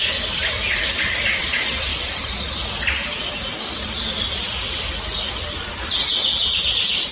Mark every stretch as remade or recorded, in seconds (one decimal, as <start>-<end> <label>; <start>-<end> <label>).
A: 0.0-7.1 recorded